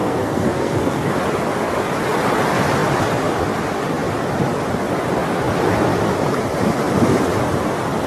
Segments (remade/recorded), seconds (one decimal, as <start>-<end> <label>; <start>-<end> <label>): 0.0-1.2 remade; 1.2-8.1 recorded